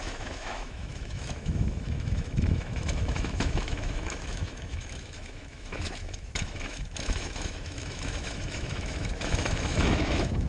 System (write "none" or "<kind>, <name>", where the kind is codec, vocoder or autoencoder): autoencoder, DAC-VAE